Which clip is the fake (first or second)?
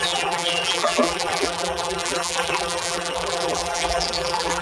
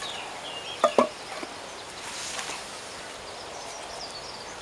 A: first